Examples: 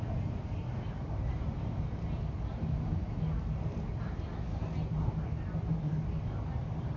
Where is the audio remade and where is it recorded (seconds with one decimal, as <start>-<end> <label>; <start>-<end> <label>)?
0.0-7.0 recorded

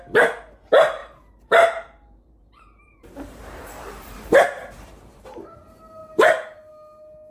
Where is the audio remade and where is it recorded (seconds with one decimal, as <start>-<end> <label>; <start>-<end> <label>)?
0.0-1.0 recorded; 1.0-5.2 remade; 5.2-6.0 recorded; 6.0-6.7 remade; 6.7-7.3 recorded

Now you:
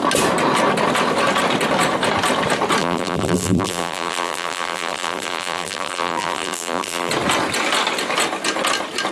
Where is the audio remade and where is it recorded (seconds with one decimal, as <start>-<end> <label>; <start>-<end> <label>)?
0.0-2.8 recorded; 2.8-7.1 remade; 7.1-9.1 recorded

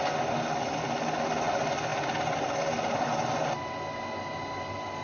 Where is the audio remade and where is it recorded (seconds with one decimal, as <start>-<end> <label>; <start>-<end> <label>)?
0.0-5.0 recorded

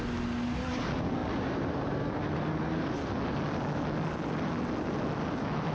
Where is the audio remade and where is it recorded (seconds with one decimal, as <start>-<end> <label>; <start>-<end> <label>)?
0.0-5.7 recorded